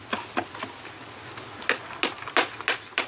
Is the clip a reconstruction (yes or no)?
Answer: no